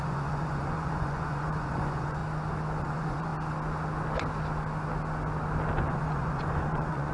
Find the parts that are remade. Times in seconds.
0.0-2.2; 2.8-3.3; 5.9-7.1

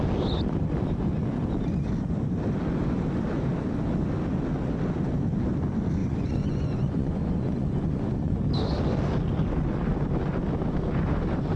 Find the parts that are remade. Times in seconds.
6.0-8.4

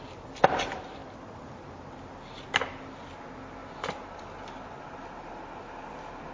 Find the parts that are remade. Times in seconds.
none

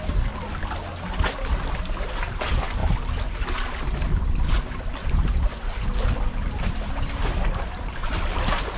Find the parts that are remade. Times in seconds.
none

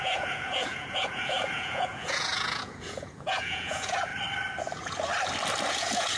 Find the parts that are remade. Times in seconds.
0.0-4.1; 4.6-5.1; 5.7-6.2

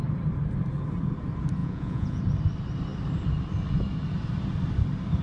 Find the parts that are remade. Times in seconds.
1.6-2.2